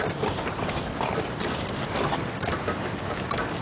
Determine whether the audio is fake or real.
real